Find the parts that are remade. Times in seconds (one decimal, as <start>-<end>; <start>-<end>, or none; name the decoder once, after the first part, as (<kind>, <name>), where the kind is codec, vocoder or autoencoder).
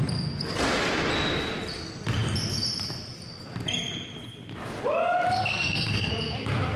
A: 5.4-6.1 (codec, SNAC)